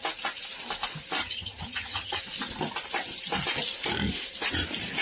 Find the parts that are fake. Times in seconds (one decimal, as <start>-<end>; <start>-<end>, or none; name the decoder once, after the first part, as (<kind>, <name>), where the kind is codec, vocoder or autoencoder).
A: 1.2-2.2 (vocoder, HiFi-GAN)